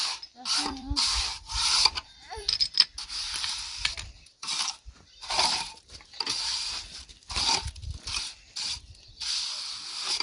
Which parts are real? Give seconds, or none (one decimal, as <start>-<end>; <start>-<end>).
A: 7.8-8.9